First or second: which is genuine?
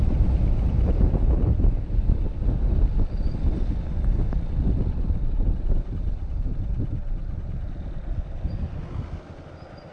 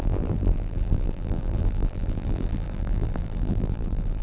first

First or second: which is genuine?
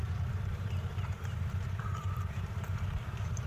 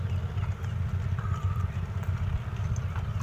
second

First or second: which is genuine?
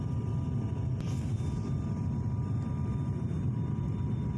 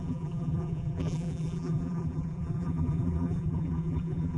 first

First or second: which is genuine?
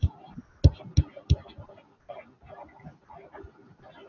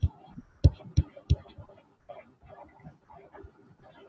first